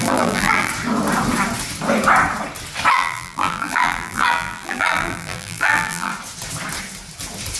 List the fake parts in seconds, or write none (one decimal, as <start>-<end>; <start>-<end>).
0.0-0.7; 2.9-6.1